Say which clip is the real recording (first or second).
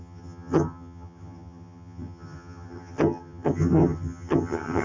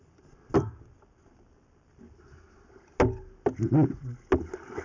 second